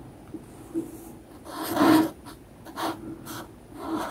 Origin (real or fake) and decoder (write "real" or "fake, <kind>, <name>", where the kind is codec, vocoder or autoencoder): real